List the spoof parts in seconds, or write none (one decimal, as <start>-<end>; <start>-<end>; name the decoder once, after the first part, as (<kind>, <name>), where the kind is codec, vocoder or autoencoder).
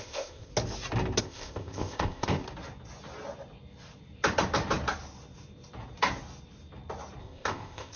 0.0-0.5 (codec, ZipCodec); 1.2-2.4; 7.2-8.0